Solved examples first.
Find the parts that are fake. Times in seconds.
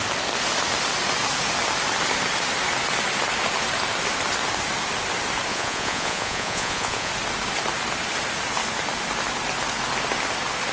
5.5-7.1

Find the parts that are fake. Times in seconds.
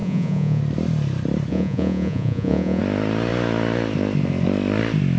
0.0-0.6; 1.5-2.8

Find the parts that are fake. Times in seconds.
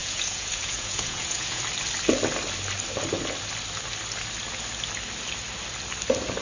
0.0-1.6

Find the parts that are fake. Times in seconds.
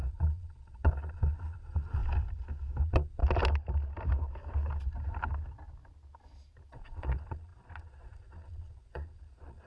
0.0-2.0; 2.8-3.2; 6.7-9.7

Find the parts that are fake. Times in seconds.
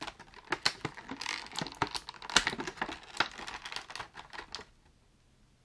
none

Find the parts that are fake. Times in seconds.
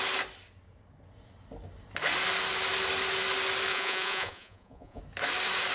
3.7-5.0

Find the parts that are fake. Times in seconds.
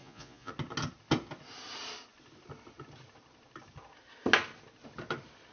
0.0-0.5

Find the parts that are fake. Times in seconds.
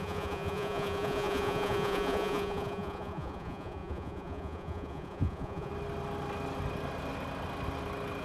0.0-5.7